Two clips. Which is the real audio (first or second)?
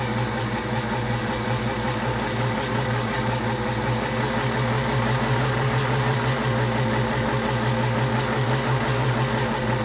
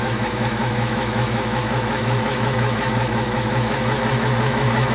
first